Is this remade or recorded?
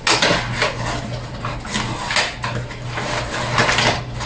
recorded